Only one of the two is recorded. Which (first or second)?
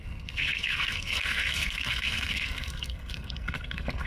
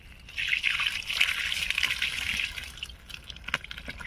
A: second